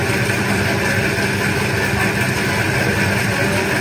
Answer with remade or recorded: recorded